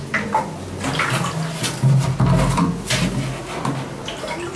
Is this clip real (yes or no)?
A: yes